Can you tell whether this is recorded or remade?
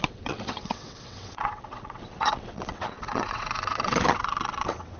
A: remade